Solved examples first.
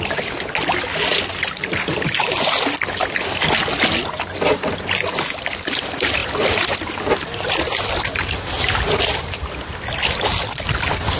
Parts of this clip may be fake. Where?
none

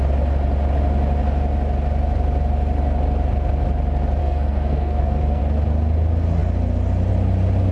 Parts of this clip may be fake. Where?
4.2-5.4 (codec, SNAC)